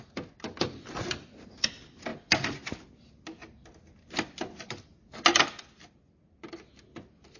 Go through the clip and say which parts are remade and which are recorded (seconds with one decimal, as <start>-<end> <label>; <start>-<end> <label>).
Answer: 0.0-7.4 recorded